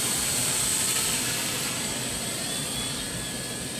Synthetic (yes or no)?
no